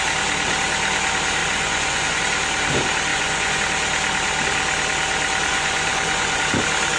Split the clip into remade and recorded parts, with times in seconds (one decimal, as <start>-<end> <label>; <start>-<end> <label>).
0.0-1.4 recorded; 1.4-2.2 remade; 2.2-3.1 recorded; 3.1-3.6 remade; 3.6-5.5 recorded; 5.5-6.4 remade; 6.4-7.0 recorded